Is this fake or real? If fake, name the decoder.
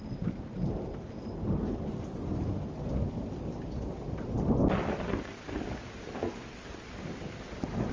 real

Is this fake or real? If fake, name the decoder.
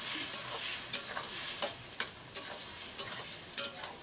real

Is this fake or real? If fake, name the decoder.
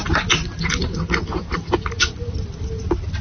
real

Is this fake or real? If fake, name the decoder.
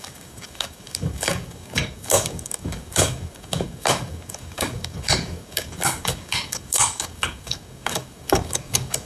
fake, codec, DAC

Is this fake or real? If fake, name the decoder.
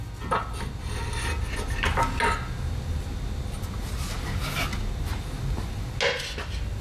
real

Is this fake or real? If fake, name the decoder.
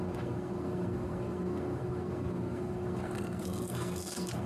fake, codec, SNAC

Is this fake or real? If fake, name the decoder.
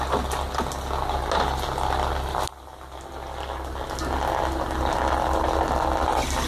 real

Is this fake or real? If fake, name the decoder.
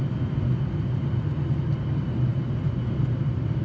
real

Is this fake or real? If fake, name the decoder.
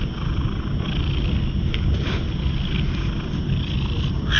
real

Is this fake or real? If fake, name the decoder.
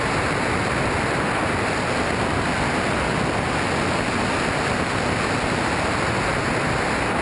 real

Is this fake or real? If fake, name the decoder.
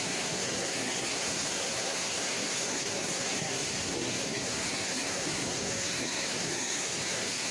fake, codec, SNAC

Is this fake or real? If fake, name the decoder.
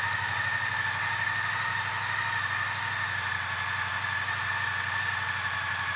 real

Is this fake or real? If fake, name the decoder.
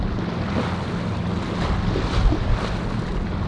real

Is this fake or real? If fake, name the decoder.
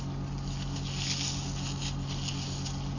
real